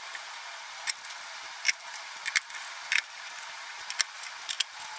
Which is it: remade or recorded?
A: recorded